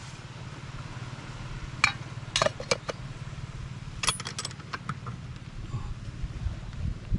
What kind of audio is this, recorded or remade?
recorded